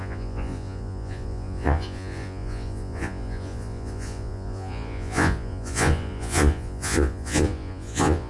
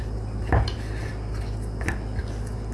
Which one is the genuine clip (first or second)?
second